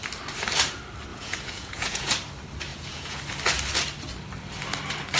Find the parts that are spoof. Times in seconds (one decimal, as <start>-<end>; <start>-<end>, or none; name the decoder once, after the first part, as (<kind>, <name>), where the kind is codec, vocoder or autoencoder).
1.1-2.1 (vocoder, Vocos); 2.7-3.2